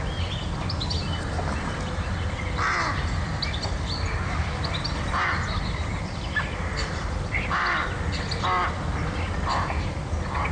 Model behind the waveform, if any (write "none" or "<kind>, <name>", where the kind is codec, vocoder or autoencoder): none